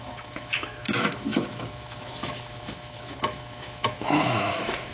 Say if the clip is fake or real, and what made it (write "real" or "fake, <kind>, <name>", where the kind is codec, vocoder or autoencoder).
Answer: fake, autoencoder, DAC-VAE